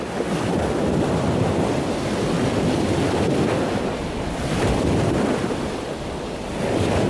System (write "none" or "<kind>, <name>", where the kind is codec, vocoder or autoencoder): none